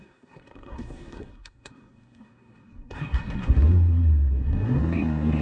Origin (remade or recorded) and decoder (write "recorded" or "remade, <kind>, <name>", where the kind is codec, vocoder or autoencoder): remade, codec, SNAC